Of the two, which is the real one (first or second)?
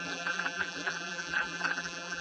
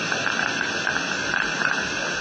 second